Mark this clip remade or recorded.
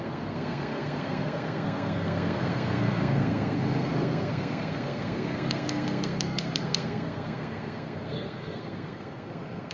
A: remade